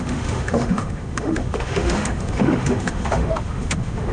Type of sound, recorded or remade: remade